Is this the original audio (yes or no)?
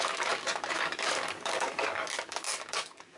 no